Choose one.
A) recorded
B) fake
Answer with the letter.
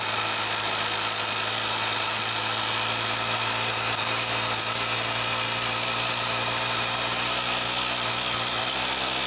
A